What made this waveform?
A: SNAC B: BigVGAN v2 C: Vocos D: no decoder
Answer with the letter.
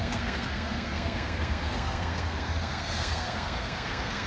A